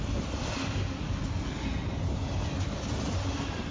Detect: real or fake real